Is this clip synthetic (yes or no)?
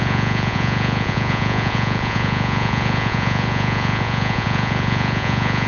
yes